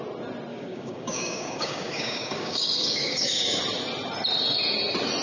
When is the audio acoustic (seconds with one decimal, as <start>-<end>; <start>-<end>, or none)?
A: 0.0-0.5; 3.6-5.2